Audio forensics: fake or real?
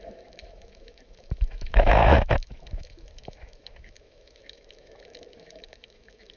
fake